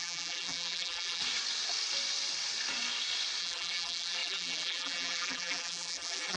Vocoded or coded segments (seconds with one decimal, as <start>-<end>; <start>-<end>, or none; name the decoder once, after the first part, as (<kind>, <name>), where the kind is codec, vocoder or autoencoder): 0.0-1.2 (vocoder, BigVGAN v2); 3.4-6.4